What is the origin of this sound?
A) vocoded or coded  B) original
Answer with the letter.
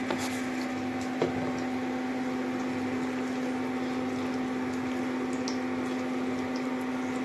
B